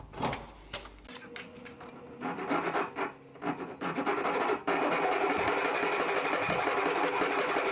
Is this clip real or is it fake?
real